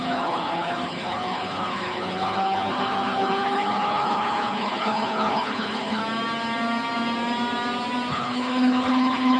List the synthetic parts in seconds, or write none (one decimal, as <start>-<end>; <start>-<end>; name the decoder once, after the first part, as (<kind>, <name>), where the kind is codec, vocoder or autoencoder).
0.0-6.0 (codec, HILCodec); 8.1-9.4